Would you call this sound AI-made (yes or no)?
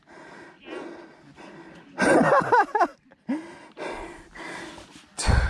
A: no